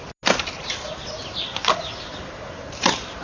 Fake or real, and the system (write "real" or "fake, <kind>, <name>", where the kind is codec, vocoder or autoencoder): real